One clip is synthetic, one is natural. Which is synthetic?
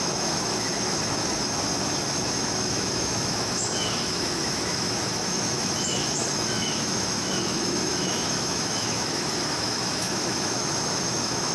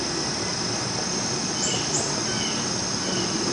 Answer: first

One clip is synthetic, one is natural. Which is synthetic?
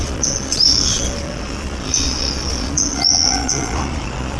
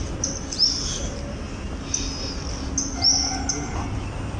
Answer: first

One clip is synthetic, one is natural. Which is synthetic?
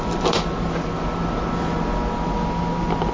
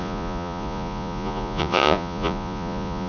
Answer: second